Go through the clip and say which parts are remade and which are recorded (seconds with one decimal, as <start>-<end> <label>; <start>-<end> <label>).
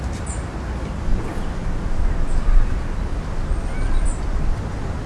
0.0-5.1 recorded